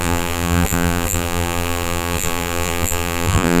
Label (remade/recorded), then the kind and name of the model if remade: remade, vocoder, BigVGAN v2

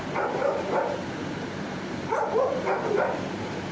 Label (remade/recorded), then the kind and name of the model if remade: remade, vocoder, BigVGAN v2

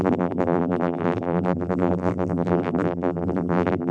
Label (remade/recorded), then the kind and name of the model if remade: remade, vocoder, BigVGAN v2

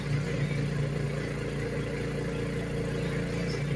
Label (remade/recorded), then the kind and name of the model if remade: recorded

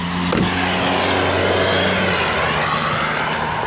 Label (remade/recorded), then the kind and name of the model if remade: recorded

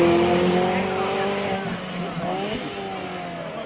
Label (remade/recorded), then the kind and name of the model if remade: recorded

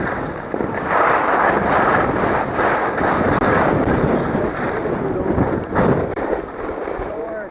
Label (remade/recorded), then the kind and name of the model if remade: remade, vocoder, BigVGAN v2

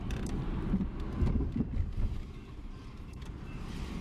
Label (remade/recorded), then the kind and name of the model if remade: remade, vocoder, BigVGAN v2